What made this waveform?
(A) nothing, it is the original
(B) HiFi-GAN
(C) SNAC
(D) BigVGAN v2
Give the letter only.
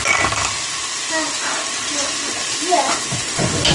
A